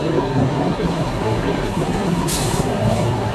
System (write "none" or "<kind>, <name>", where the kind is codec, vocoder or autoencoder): codec, SNAC